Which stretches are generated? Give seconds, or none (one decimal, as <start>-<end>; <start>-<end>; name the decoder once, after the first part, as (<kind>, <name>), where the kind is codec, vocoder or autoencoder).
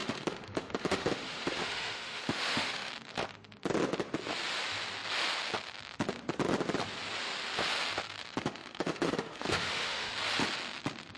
0.0-2.9 (autoencoder, DAC-VAE); 8.2-10.1